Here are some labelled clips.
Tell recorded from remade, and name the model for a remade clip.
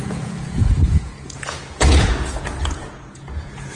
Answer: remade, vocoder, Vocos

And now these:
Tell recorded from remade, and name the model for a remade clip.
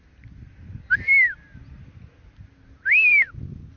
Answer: recorded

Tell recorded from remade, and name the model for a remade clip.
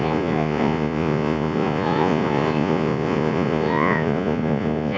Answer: remade, vocoder, Vocos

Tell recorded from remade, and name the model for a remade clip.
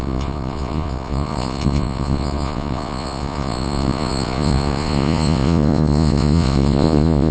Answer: remade, vocoder, Vocos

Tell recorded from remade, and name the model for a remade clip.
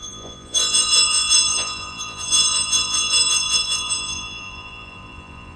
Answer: remade, vocoder, Vocos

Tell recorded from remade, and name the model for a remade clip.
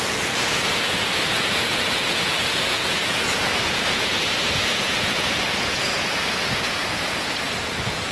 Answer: remade, vocoder, Vocos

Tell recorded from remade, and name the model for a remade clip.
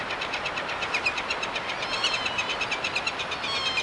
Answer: recorded